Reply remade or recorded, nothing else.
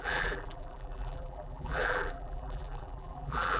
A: remade